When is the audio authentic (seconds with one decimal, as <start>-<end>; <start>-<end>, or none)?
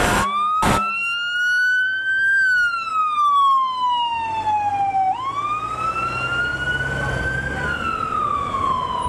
0.0-8.0; 8.6-9.1